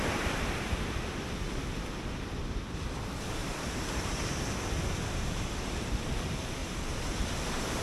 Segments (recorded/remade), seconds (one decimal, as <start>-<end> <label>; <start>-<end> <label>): 0.0-3.4 recorded; 3.4-4.2 remade; 4.2-6.6 recorded; 6.6-7.8 remade